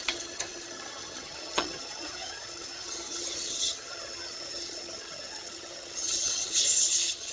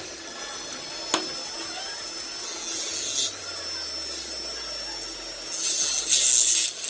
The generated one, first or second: first